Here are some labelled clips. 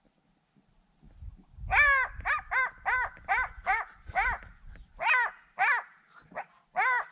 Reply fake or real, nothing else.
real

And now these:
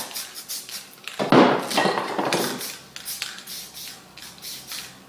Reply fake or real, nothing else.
real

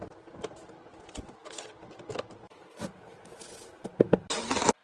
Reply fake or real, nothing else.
real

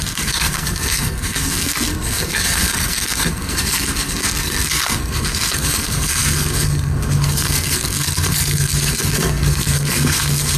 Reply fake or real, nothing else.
fake